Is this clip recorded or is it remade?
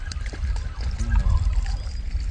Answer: recorded